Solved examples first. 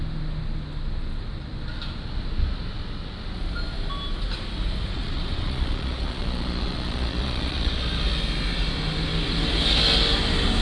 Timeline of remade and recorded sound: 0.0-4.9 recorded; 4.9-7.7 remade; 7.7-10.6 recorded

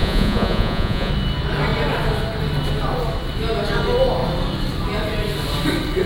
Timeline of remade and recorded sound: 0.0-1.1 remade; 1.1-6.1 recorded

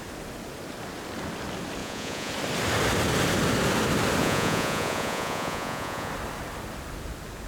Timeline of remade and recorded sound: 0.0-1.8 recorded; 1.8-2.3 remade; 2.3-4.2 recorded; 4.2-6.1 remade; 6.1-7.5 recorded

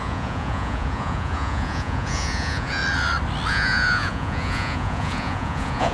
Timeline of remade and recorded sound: 0.0-2.8 remade; 2.8-3.5 recorded; 3.5-5.9 remade

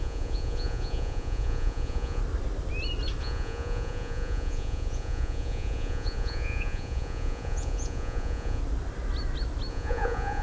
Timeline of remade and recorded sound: 0.0-2.2 remade; 2.2-3.2 recorded; 3.2-8.6 remade; 8.6-9.7 recorded; 9.7-10.4 remade